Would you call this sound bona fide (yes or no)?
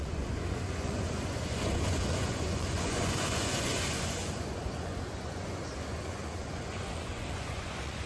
no